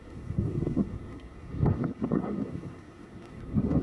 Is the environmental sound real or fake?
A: fake